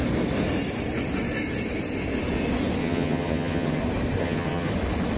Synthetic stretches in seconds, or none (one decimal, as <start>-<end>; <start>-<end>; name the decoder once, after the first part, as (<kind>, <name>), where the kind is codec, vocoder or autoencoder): 2.8-3.8 (vocoder, HiFi-GAN); 4.2-4.7